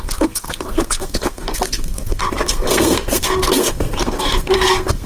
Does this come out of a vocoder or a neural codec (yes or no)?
yes